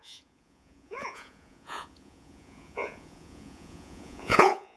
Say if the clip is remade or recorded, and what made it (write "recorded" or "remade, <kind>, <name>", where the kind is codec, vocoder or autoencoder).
remade, vocoder, Vocos